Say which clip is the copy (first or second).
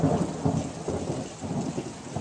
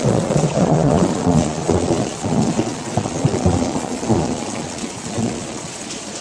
second